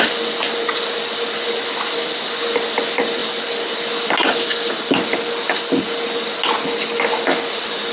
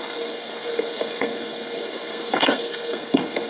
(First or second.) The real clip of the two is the first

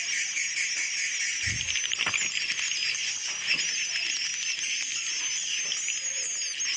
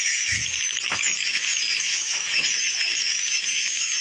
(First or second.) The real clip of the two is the first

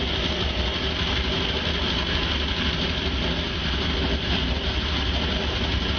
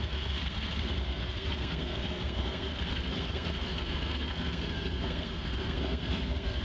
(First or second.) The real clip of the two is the first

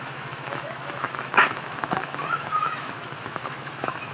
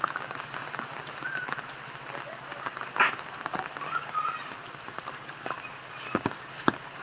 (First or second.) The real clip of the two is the second